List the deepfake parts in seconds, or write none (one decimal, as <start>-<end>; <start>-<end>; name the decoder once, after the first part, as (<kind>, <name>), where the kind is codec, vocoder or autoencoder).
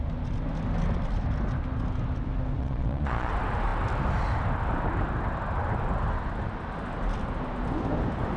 2.6-3.3 (vocoder, Vocos)